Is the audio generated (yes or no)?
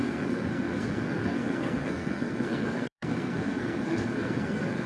yes